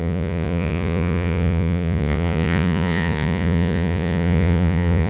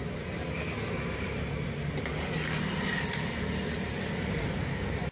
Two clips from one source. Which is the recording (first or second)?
second